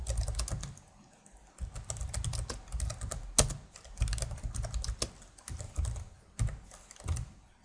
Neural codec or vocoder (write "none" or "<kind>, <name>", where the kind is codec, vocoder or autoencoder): none